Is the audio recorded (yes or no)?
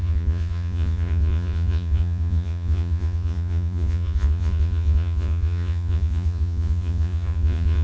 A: no